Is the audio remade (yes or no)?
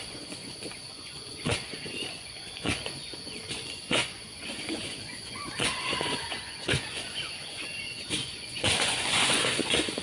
yes